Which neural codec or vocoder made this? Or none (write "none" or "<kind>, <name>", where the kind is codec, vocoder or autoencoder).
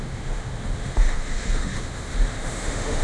autoencoder, DAC-VAE